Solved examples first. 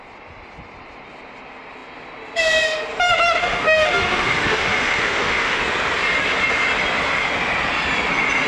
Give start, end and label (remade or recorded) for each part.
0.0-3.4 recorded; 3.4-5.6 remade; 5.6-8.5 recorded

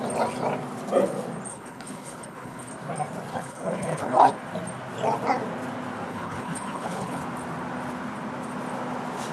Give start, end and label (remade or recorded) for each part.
0.0-1.5 recorded; 1.5-2.7 remade; 2.7-3.3 recorded; 3.3-4.3 remade; 4.3-6.1 recorded; 6.1-7.2 remade; 7.2-9.3 recorded

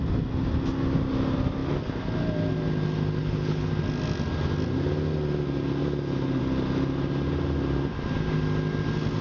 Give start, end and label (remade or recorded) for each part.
0.0-3.2 recorded; 3.2-3.7 remade; 3.7-9.2 recorded

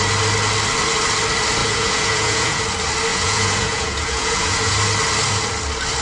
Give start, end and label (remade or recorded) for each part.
0.0-1.6 recorded; 1.6-2.6 remade; 2.6-3.1 recorded; 3.1-4.7 remade; 4.7-6.0 recorded